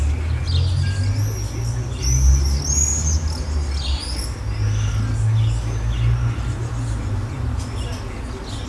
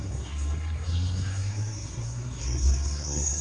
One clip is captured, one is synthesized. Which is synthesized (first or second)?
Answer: second